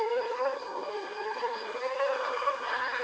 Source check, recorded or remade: remade